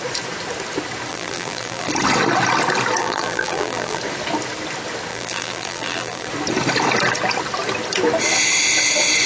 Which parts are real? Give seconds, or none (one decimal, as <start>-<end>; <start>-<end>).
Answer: 0.0-1.1; 1.9-3.0; 4.0-5.1; 6.3-9.3